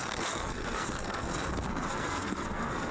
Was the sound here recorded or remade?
remade